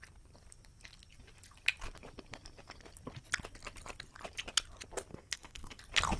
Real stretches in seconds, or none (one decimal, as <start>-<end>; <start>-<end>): 0.0-5.1; 5.8-6.2